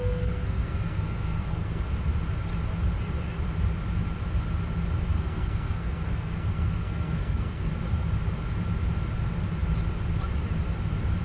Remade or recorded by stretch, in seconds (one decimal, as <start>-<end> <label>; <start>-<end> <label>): 0.0-1.8 remade; 1.8-5.1 recorded; 5.1-7.7 remade; 7.7-11.2 recorded